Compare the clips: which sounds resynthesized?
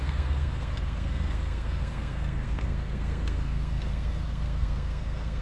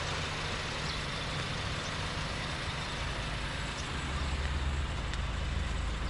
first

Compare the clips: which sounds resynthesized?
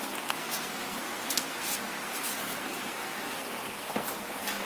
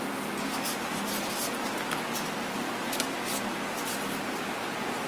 first